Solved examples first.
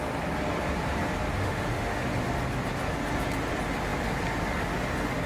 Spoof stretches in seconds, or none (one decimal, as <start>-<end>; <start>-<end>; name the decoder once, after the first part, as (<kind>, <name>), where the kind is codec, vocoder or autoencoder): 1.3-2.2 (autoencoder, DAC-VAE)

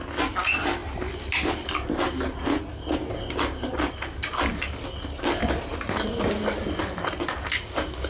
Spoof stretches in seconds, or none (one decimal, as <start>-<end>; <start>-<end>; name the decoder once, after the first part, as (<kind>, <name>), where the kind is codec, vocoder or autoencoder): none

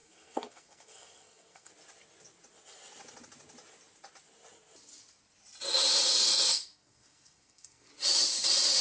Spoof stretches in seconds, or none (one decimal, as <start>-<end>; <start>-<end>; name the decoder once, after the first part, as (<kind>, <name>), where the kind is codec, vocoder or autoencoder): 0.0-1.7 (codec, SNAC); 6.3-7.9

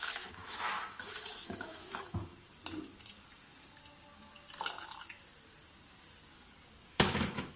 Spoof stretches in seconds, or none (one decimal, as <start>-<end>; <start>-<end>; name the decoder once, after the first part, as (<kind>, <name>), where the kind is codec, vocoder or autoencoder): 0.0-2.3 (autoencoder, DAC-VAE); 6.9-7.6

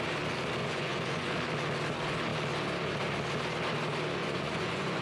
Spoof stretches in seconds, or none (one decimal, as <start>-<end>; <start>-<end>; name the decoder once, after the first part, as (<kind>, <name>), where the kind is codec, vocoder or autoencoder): 0.6-1.3 (vocoder, Vocos); 4.2-5.0